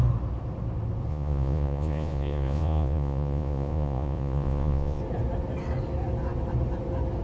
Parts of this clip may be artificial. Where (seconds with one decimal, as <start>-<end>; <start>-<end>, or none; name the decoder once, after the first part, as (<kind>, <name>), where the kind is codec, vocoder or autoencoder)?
1.1-5.0 (vocoder, Vocos)